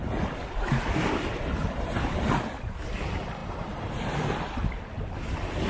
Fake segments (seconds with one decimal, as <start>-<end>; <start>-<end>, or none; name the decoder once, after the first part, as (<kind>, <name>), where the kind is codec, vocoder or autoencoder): 0.0-5.7 (vocoder, BigVGAN v2)